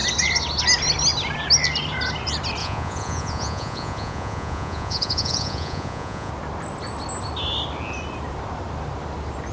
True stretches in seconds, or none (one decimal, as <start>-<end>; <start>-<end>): 0.0-2.6; 6.3-9.5